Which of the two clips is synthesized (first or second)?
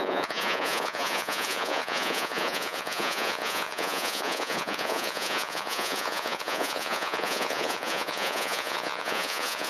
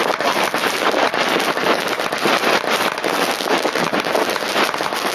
first